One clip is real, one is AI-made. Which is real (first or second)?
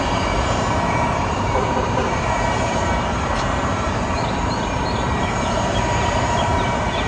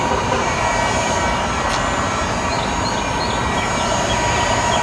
second